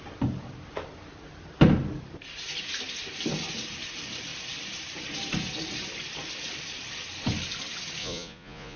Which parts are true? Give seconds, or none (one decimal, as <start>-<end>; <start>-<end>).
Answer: 0.0-8.0